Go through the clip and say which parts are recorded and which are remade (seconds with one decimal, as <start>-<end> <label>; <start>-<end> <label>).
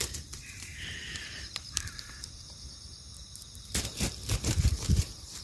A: 0.0-5.4 remade